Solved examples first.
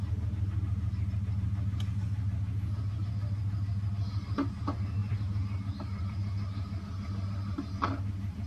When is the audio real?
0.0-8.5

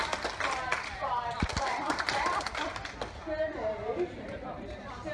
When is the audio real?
0.0-1.0; 2.7-5.1

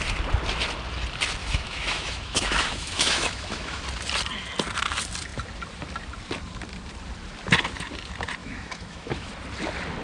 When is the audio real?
0.0-1.4; 3.8-8.4; 9.3-10.0

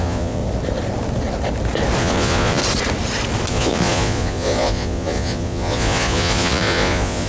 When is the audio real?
0.4-2.0; 2.6-3.5

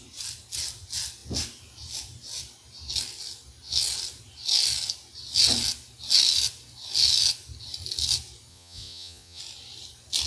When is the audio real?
0.0-8.5; 9.4-10.3

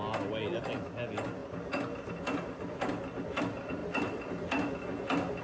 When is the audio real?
0.0-5.4